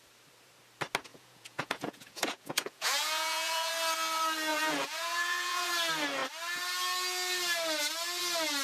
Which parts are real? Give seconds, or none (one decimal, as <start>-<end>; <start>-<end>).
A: 0.0-1.1; 3.7-4.5; 5.7-8.6